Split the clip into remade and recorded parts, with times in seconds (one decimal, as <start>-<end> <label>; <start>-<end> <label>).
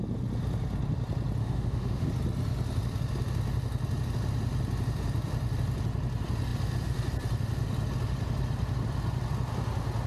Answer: 0.0-1.4 recorded; 1.4-2.1 remade; 2.1-10.1 recorded